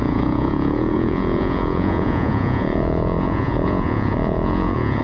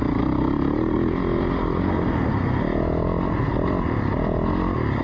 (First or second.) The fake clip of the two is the first